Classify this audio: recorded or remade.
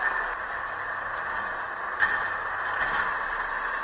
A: recorded